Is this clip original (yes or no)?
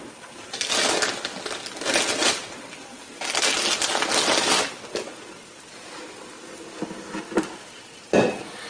yes